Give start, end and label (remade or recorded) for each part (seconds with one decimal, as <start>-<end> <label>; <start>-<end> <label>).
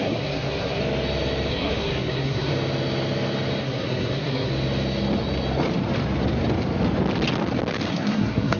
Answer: 0.0-0.8 remade; 0.8-1.5 recorded; 1.5-2.5 remade; 2.5-3.6 recorded; 3.6-4.5 remade; 4.5-7.9 recorded; 7.9-8.6 remade